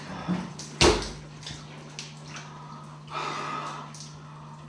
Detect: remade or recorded recorded